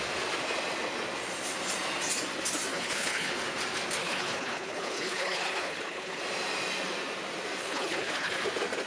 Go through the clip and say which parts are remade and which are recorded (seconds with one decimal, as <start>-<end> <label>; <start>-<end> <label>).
0.0-2.7 recorded; 2.7-3.3 remade; 3.3-4.0 recorded; 4.0-6.2 remade; 6.2-7.6 recorded; 7.6-8.4 remade; 8.4-8.9 recorded